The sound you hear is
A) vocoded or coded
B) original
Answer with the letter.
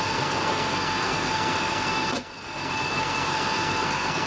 A